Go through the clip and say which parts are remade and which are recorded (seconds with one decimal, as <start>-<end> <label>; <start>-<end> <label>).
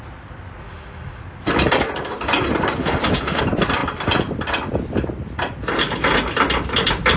0.0-0.6 recorded; 0.6-1.2 remade; 1.2-2.8 recorded; 2.8-3.4 remade; 3.4-7.2 recorded